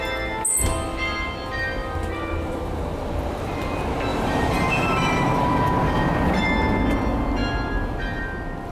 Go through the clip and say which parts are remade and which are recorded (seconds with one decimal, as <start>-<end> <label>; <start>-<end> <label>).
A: 0.0-1.8 recorded; 1.8-3.1 remade; 3.1-4.1 recorded; 4.1-5.6 remade; 5.6-8.7 recorded